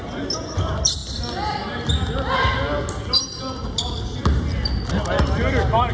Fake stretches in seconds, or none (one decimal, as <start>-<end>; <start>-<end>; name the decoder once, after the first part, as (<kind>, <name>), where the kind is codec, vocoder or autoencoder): none